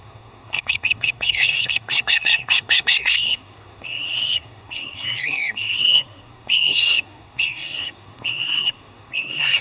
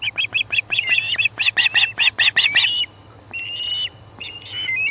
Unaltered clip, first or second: second